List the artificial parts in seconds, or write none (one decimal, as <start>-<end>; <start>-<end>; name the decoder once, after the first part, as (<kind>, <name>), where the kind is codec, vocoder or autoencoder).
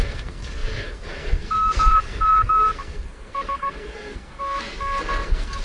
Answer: 0.0-5.6 (codec, SNAC)